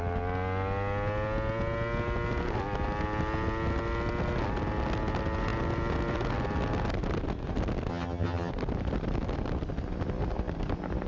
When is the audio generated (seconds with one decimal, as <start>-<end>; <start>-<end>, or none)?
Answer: 7.9-8.5